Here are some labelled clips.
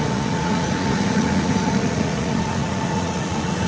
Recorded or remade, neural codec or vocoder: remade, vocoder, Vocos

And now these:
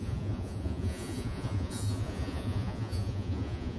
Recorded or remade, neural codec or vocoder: remade, vocoder, Vocos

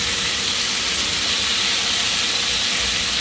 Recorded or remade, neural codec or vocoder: recorded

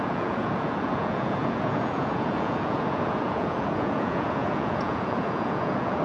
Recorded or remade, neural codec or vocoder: remade, vocoder, Vocos